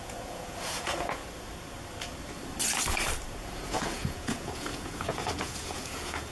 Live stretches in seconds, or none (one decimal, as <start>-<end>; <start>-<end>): 1.2-3.4